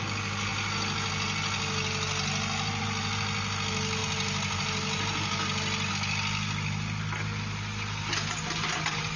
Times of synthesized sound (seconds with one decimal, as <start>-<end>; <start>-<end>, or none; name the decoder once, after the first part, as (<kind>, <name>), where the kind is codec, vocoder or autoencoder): none